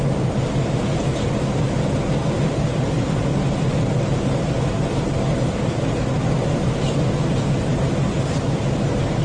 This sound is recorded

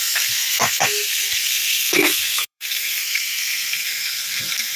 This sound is remade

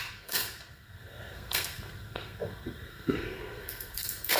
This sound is remade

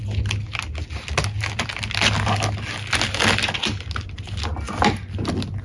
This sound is recorded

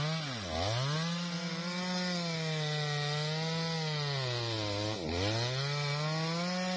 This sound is recorded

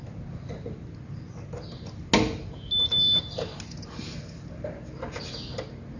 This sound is recorded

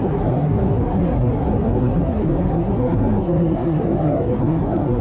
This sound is remade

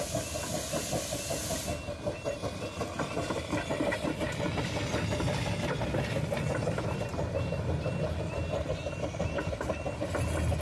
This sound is recorded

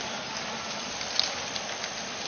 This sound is recorded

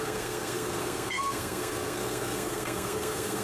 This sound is remade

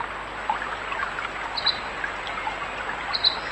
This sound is recorded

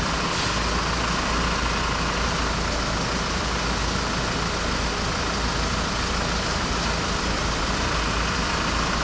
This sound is recorded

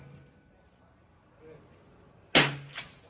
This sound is recorded